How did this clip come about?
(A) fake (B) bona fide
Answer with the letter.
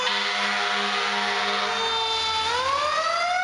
B